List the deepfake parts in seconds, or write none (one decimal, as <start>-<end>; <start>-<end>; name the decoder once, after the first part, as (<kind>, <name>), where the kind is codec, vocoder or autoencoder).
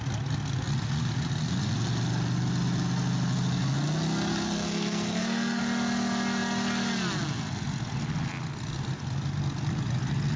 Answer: 4.3-5.6 (codec, SNAC)